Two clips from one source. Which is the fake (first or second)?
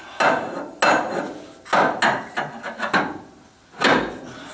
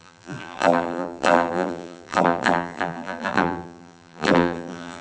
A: second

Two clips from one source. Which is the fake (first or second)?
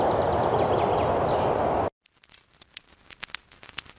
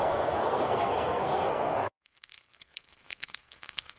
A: second